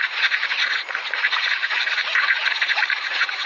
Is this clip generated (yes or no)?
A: yes